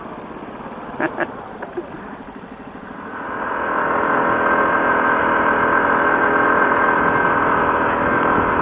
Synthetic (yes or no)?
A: no